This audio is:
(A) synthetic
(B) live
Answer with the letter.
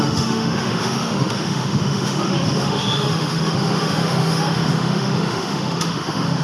A